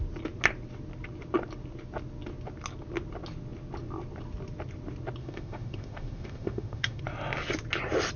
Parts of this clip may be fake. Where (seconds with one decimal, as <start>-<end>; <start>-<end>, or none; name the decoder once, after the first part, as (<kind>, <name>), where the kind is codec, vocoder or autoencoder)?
5.2-7.0 (autoencoder, DAC-VAE)